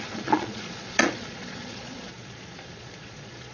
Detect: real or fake fake